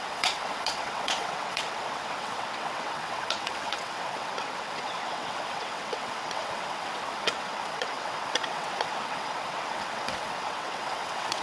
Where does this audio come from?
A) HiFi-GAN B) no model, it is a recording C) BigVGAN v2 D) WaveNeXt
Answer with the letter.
D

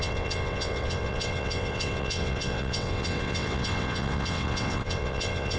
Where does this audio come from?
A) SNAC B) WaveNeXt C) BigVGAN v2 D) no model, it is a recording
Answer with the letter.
B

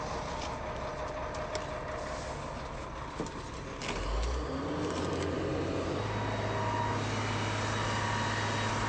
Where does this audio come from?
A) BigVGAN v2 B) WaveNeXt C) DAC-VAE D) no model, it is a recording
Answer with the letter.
D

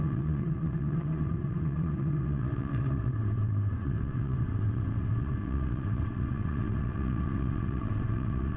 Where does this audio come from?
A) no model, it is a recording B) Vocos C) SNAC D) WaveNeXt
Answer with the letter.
D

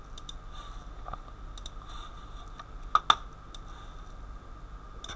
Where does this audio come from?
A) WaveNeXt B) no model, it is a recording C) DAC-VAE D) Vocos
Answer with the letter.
B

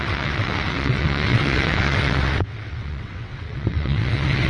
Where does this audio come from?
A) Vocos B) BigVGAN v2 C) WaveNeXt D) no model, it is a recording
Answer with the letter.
C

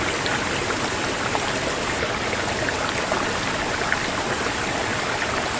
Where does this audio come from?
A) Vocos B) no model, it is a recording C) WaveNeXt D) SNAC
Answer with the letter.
B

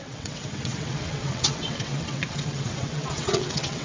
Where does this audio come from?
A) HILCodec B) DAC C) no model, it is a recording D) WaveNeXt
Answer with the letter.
D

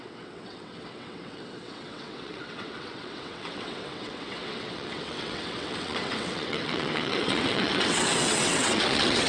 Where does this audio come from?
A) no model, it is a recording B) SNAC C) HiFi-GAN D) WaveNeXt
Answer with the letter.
D